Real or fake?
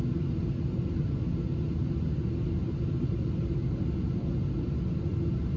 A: real